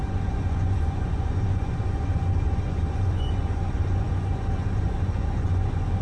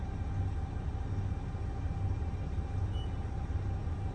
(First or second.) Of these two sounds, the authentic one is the second